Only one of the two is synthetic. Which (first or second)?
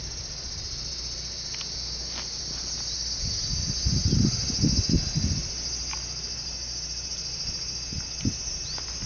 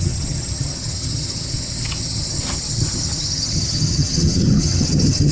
second